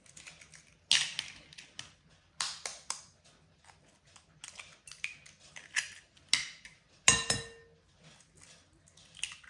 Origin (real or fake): real